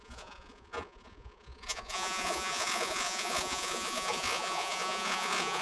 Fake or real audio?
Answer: fake